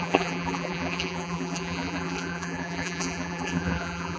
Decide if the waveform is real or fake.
fake